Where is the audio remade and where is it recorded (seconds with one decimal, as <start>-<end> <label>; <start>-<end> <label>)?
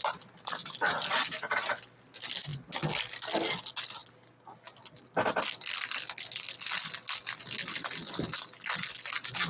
0.0-9.5 recorded